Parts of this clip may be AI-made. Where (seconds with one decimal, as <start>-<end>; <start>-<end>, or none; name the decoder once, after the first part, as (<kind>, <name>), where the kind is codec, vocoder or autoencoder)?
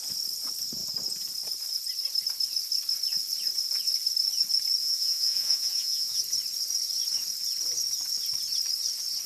4.8-6.2 (vocoder, Vocos)